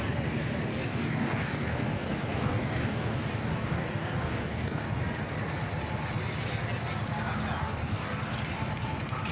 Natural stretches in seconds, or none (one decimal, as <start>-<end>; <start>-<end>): 0.0-0.7; 4.9-7.6; 8.2-9.3